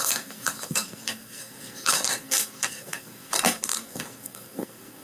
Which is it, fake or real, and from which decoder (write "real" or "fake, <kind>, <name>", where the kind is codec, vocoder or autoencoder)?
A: fake, codec, SNAC